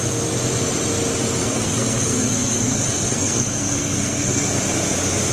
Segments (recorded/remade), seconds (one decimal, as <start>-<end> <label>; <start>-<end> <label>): 0.0-1.4 recorded; 1.4-4.6 remade; 4.6-5.3 recorded